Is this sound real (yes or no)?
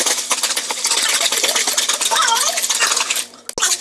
yes